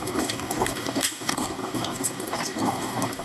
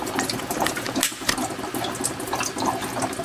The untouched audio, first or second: second